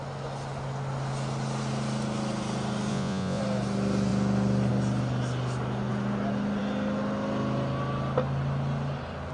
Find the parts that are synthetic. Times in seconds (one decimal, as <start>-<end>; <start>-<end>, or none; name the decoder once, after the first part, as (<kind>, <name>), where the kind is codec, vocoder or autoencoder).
2.9-3.4 (vocoder, Vocos)